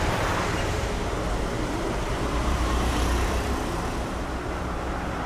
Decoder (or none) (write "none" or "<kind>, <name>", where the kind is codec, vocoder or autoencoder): vocoder, BigVGAN v2